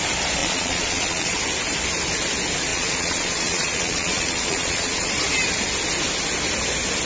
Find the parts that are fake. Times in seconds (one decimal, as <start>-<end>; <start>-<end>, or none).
0.4-1.4; 2.7-5.1